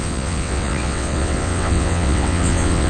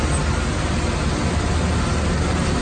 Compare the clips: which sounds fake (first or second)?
first